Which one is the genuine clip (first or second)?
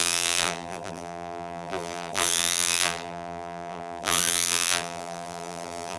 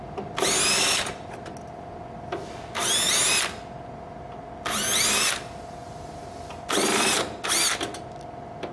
second